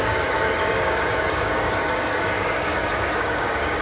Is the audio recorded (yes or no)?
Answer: no